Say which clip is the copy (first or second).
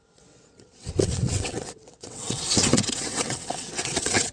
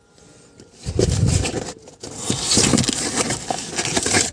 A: first